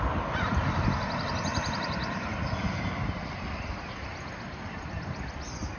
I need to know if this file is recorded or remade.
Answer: recorded